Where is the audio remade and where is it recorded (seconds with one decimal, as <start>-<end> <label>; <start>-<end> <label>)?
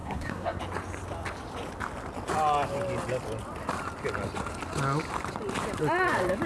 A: 0.0-0.6 remade; 0.6-6.5 recorded